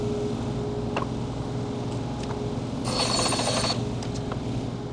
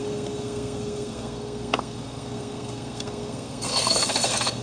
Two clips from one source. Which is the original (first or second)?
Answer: first